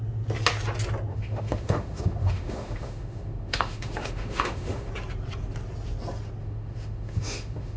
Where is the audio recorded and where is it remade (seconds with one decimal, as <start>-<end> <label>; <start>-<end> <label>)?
0.0-1.1 recorded; 1.1-4.9 remade; 4.9-6.4 recorded; 6.4-7.8 remade